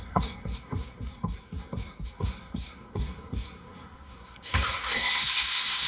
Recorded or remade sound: remade